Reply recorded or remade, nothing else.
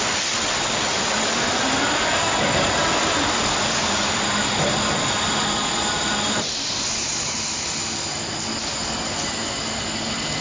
recorded